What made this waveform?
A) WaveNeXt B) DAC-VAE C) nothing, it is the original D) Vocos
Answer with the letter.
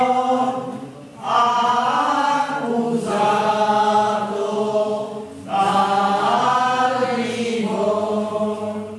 C